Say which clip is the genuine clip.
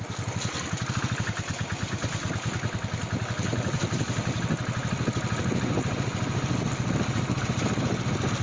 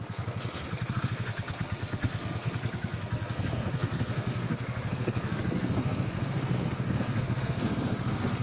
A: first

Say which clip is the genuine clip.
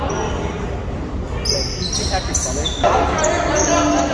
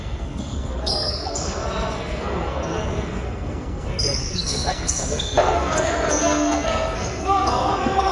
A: first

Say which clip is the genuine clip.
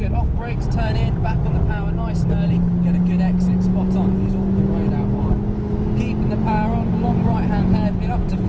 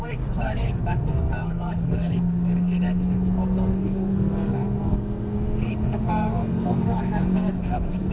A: first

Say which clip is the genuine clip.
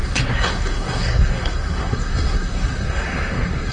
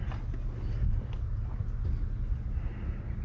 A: second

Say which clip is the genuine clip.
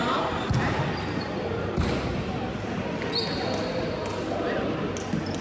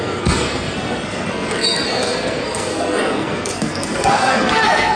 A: first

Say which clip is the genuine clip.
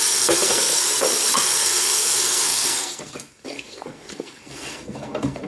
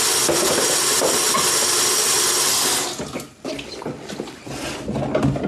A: second